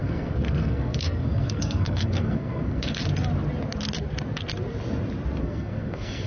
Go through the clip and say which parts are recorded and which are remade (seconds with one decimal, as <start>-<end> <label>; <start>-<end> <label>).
0.0-3.0 remade; 3.0-5.4 recorded; 5.4-6.3 remade